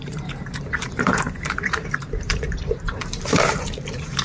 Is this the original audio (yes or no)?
no